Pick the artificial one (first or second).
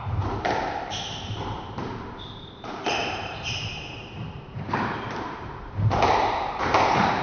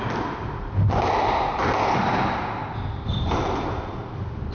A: first